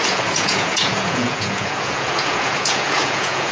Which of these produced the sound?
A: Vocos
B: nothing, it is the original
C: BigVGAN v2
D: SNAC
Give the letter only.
A